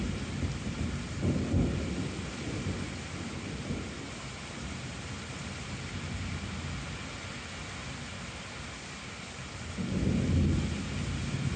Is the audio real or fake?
real